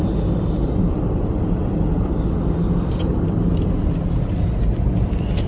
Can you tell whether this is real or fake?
real